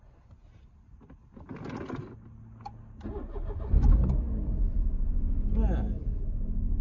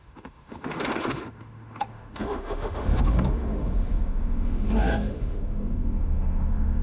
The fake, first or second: second